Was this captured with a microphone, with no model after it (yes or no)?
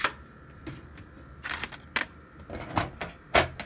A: yes